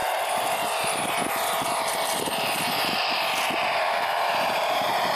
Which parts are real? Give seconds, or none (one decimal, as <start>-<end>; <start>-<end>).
0.0-5.2